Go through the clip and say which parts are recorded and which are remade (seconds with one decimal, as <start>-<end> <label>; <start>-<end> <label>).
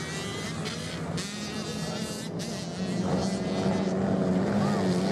0.0-5.1 recorded